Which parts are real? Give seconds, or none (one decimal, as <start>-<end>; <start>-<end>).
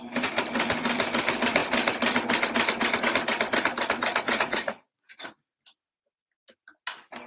0.0-4.1; 5.3-7.3